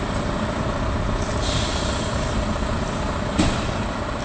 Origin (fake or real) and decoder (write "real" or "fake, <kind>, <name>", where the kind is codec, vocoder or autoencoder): real